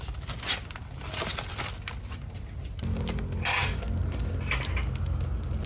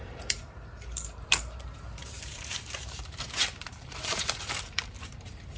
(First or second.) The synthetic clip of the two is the second